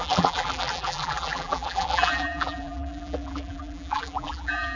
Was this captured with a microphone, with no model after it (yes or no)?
no